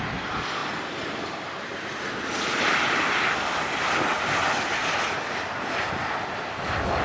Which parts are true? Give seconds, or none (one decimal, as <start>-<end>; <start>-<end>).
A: 0.0-7.0